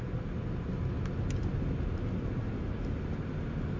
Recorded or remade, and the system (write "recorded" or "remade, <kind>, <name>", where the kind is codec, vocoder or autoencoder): recorded